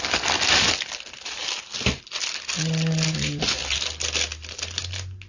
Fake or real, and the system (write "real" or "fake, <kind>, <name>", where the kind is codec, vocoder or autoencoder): real